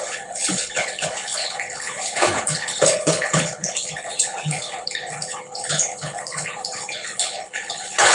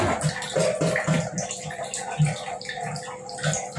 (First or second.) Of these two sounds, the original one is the second